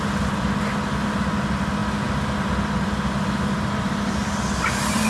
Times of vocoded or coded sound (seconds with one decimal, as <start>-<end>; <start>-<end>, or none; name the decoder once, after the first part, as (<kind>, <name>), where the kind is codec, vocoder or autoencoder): 4.2-5.1 (vocoder, BigVGAN v2)